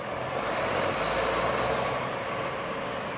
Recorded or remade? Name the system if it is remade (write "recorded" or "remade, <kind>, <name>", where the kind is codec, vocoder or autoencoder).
recorded